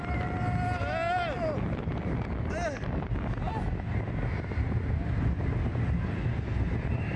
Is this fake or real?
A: real